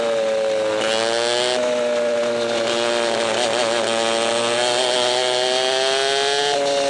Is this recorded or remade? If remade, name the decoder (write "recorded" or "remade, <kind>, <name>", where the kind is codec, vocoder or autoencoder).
recorded